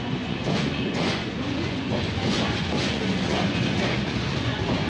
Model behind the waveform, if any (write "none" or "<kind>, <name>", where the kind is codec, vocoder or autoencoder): vocoder, Vocos